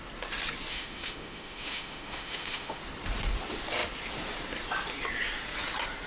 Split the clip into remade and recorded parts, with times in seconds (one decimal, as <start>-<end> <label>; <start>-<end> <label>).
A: 0.0-0.7 recorded; 0.7-2.8 remade; 2.8-6.1 recorded